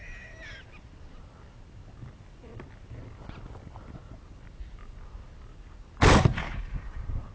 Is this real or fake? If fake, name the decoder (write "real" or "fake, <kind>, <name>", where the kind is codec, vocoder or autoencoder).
real